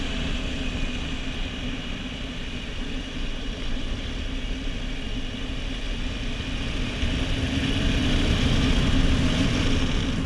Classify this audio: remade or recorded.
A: recorded